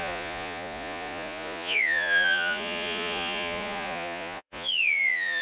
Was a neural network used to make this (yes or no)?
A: yes